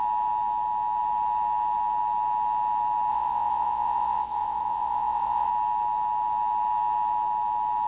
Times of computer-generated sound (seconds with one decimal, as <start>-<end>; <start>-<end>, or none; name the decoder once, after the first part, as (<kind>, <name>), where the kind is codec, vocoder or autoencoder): 3.1-5.5 (vocoder, WaveNeXt)